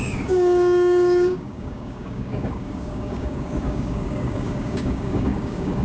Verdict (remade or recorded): remade